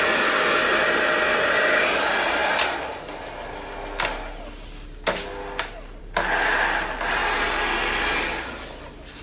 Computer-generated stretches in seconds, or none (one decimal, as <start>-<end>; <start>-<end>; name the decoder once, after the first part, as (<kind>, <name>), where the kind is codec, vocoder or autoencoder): none